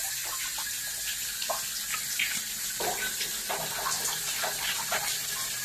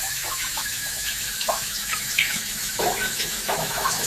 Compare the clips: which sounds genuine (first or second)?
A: first